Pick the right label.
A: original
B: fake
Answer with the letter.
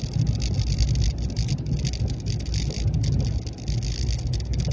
A